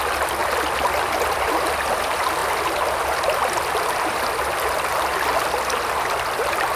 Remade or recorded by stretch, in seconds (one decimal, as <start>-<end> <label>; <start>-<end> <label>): 0.0-6.8 recorded